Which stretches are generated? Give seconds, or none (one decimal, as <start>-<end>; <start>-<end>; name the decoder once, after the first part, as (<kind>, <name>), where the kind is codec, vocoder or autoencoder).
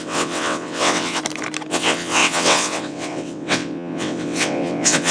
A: 0.0-1.2 (vocoder, WaveNeXt); 1.7-5.1